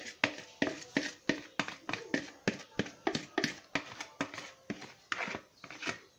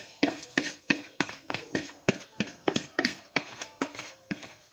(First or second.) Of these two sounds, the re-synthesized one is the second